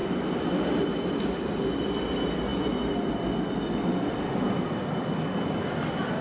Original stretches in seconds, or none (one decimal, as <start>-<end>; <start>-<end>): 0.0-6.2